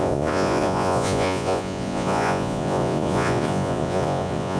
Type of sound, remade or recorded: remade